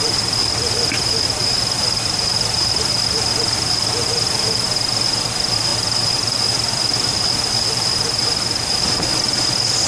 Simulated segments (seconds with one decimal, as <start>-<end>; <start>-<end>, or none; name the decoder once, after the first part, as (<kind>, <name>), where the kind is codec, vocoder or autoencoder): none